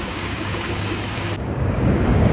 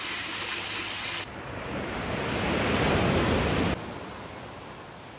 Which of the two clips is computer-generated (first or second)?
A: first